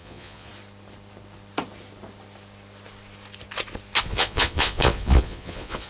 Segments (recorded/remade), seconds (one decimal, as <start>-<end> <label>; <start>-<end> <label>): 0.0-0.5 remade; 0.5-4.0 recorded; 4.0-5.9 remade